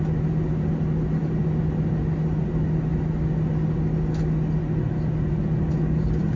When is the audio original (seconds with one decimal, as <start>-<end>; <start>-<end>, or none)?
0.0-6.4